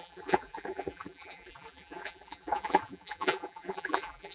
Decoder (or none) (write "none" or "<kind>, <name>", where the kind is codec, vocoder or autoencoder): vocoder, BigVGAN v2